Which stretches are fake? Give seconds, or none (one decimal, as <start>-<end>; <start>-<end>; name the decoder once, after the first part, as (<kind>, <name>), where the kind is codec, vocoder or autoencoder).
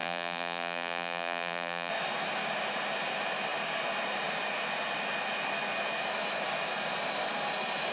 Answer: 0.0-1.9 (vocoder, BigVGAN v2)